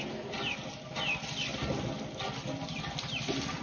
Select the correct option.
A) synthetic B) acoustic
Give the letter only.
B